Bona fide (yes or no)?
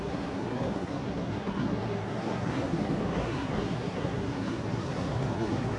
no